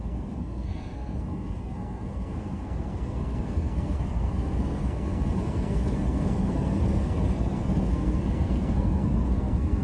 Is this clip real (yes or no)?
no